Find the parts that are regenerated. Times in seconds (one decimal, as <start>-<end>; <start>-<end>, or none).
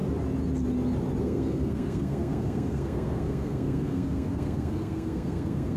1.2-5.8